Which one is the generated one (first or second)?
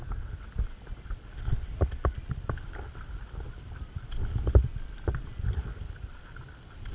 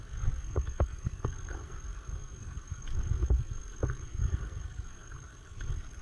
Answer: second